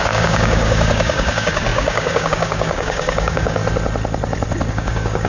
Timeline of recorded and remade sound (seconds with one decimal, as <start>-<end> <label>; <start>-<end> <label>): 0.0-3.6 remade; 3.6-4.7 recorded; 4.7-5.3 remade